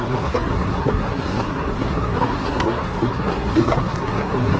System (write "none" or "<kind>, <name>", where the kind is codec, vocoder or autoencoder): codec, SNAC